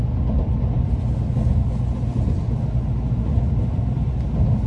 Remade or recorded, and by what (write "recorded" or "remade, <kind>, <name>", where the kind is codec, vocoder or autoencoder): recorded